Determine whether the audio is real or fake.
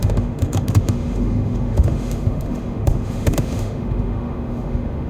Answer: fake